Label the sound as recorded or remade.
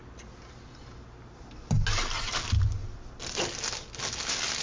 recorded